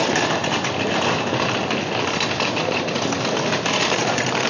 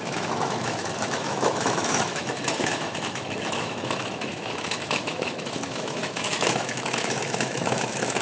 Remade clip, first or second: second